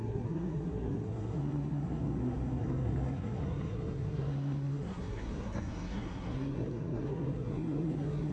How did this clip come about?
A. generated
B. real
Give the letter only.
A